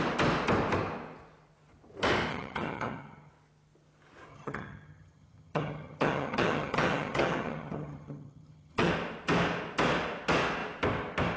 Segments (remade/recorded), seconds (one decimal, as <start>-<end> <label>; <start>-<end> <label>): 0.0-2.3 recorded; 2.3-3.3 remade; 3.3-4.3 recorded; 4.3-8.9 remade; 8.9-11.4 recorded